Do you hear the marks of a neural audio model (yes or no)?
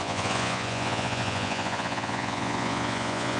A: yes